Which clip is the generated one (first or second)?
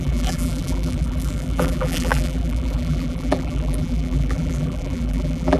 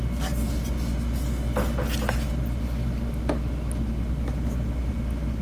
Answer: first